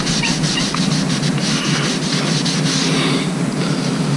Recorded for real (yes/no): yes